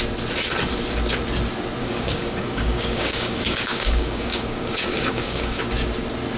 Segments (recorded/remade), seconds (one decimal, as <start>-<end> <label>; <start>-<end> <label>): 0.0-1.8 recorded; 1.8-5.6 remade; 5.6-6.4 recorded

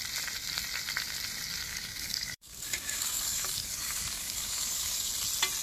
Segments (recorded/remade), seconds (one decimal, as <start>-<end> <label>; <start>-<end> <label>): 0.0-1.7 recorded; 1.7-5.1 remade; 5.1-5.6 recorded

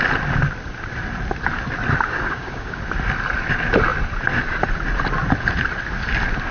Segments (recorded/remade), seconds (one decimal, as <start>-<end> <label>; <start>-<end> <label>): 0.0-2.1 recorded; 2.1-2.8 remade; 2.8-6.5 recorded

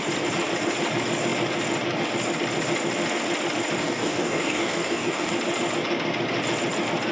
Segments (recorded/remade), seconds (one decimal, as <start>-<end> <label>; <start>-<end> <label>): 0.0-3.8 recorded; 3.8-5.3 remade; 5.3-7.1 recorded